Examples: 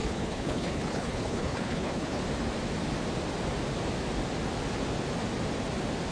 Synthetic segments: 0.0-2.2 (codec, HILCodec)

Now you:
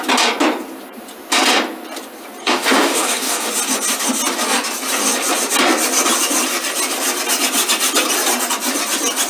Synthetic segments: 2.4-3.5 (codec, DAC)

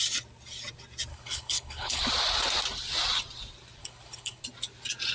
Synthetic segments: 1.1-2.0 (codec, HILCodec); 3.8-4.4

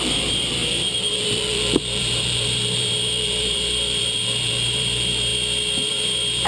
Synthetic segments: 0.0-5.3 (vocoder, BigVGAN v2); 5.9-6.5